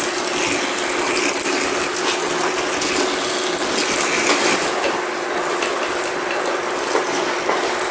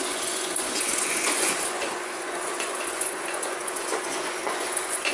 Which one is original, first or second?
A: first